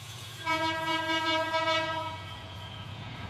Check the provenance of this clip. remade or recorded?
remade